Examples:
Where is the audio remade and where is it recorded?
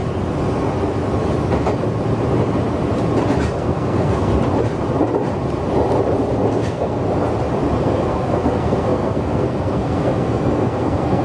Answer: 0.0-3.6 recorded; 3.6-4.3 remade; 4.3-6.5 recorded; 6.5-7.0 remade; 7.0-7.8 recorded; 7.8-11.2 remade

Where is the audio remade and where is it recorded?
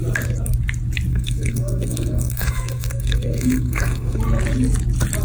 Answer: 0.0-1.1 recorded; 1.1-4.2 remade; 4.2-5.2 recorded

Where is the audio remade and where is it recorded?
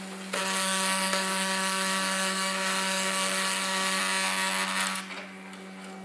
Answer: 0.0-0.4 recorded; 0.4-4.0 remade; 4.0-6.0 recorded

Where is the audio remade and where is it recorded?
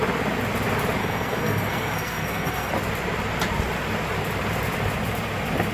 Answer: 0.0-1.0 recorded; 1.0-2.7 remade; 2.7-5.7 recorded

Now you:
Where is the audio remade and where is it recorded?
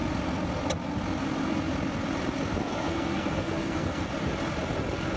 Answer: 0.0-2.6 recorded; 2.6-4.1 remade; 4.1-5.2 recorded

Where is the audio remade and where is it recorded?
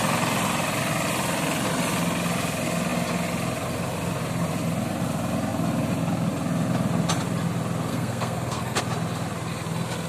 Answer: 0.0-7.9 recorded; 7.9-8.8 remade; 8.8-10.1 recorded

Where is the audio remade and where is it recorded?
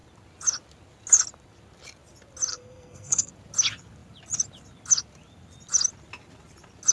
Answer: 0.0-2.5 recorded; 2.5-3.3 remade; 3.3-6.9 recorded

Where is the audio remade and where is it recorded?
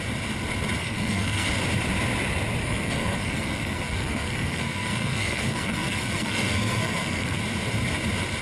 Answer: 0.0-0.8 recorded; 0.8-1.5 remade; 1.5-2.6 recorded; 2.6-7.4 remade; 7.4-8.4 recorded